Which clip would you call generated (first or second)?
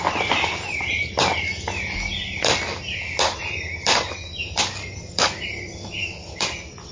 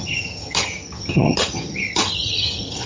second